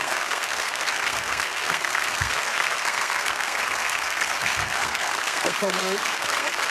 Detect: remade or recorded remade